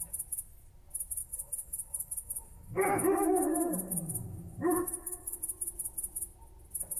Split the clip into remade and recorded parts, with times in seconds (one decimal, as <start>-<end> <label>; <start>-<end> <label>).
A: 0.0-1.2 recorded; 1.2-5.4 remade; 5.4-7.0 recorded